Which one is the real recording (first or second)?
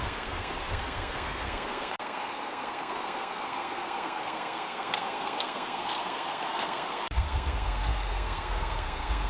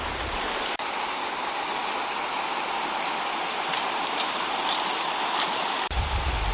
second